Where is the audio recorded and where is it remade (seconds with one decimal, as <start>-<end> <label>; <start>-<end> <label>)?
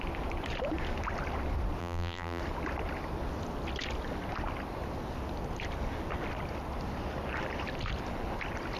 0.0-1.8 recorded; 1.8-2.4 remade; 2.4-8.8 recorded